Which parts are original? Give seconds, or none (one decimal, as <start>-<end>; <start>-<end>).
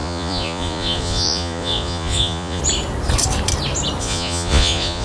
2.6-4.0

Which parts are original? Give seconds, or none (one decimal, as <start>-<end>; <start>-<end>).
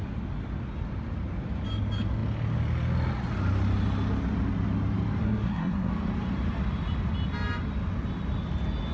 0.0-5.2; 5.9-8.9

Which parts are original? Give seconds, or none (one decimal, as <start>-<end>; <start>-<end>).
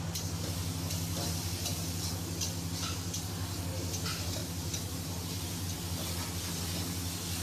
0.0-4.4; 5.8-7.4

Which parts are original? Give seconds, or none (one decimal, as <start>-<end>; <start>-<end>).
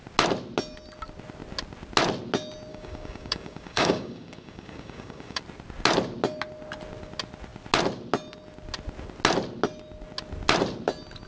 0.0-2.7; 5.4-11.3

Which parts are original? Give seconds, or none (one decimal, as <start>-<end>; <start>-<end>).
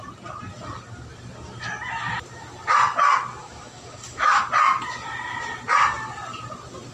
0.0-3.4; 4.4-6.9